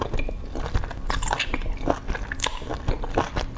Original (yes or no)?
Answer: yes